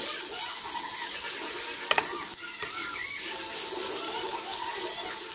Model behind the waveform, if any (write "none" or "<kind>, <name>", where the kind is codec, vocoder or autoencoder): none